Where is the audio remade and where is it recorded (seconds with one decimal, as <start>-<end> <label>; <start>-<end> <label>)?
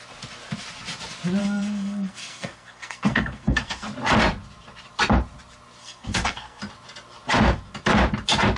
0.0-1.4 recorded; 1.4-3.9 remade; 3.9-5.8 recorded; 5.8-6.6 remade; 6.6-8.6 recorded